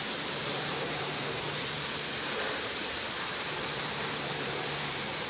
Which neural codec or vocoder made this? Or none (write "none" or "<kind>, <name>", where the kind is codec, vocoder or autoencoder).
vocoder, BigVGAN v2